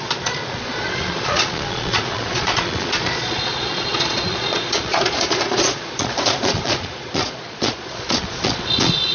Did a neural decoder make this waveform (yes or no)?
yes